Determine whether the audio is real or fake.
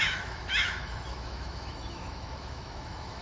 fake